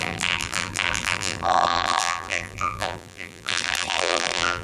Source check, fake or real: fake